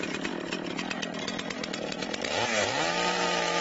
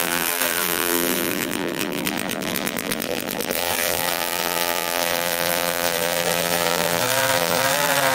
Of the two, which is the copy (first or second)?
second